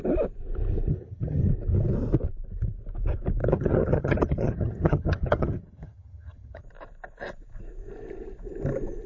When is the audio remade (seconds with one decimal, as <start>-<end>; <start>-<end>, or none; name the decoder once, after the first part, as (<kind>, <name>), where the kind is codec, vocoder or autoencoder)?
0.9-1.4 (vocoder, HiFi-GAN); 3.4-6.6